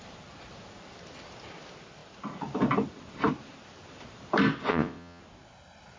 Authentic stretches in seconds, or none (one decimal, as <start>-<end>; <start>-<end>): 0.0-4.7; 5.2-6.0